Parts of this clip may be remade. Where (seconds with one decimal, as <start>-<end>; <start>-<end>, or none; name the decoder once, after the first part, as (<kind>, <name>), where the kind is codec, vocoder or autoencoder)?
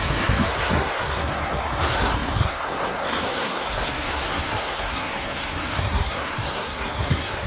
0.0-7.5 (codec, SNAC)